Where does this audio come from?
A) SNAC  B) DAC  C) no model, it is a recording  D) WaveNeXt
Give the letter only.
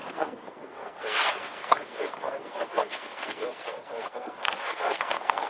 A